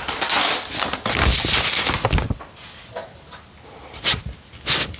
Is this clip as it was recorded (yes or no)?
yes